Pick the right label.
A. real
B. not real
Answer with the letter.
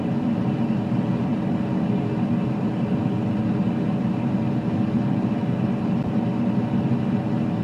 A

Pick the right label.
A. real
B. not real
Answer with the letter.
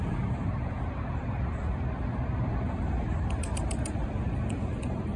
B